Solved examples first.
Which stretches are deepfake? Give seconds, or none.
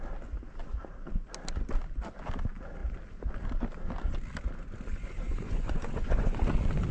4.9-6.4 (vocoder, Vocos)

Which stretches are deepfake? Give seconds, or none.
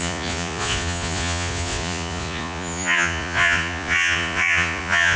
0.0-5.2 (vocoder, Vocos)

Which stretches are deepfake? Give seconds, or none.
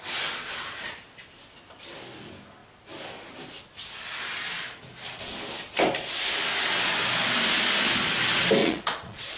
8.6-9.4 (vocoder, Vocos)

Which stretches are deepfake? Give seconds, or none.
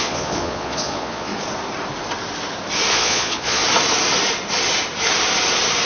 0.0-1.3 (vocoder, Vocos); 2.9-3.6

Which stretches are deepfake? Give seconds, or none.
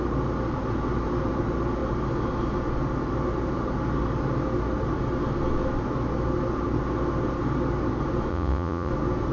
8.3-8.9 (vocoder, Vocos)